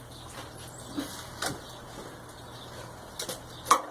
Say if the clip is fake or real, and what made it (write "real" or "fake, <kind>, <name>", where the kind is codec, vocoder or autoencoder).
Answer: real